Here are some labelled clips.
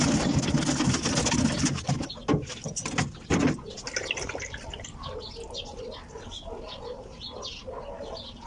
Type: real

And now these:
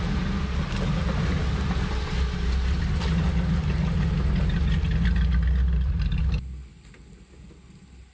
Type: real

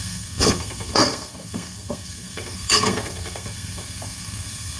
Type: fake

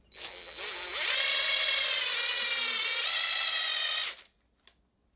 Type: real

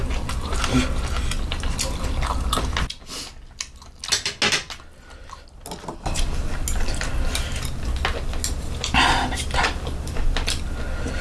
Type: real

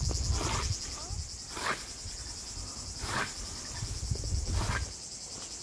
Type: real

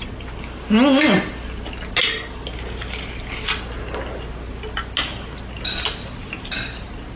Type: real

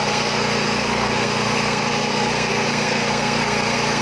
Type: fake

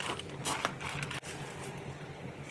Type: real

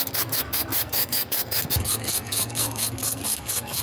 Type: fake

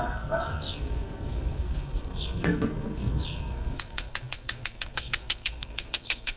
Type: fake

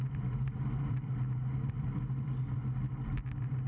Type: real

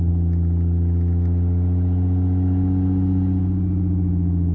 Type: real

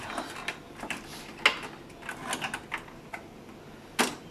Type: real